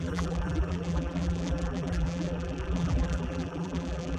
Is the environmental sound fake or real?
fake